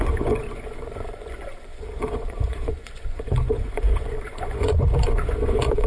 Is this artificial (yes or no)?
yes